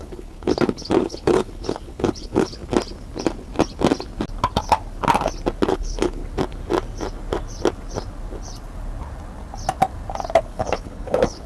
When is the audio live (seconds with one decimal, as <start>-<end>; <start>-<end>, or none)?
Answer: 2.6-5.7; 6.2-10.4